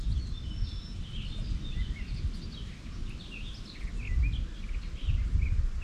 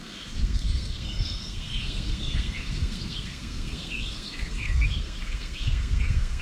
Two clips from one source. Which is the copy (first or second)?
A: second